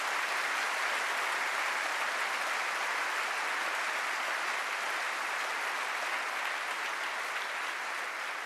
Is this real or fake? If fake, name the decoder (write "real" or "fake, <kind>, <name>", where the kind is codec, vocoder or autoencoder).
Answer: real